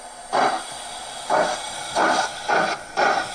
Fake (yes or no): no